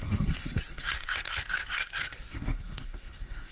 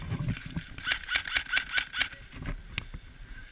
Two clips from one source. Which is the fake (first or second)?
first